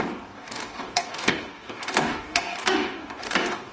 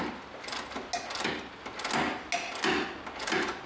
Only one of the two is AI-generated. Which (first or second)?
first